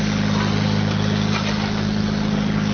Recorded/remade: recorded